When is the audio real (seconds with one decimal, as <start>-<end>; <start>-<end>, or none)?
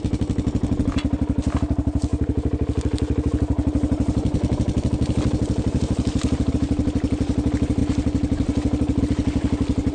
0.0-9.9